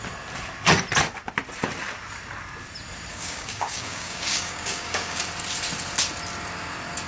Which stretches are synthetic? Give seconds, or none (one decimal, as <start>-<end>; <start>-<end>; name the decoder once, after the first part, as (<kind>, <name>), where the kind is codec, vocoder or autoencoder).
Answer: 3.1-5.2 (codec, DAC)